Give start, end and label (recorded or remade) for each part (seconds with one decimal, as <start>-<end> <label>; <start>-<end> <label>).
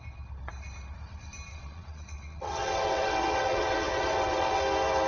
0.0-1.5 recorded; 1.5-4.6 remade; 4.6-5.1 recorded